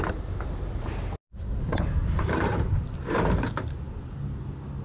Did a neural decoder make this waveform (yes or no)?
no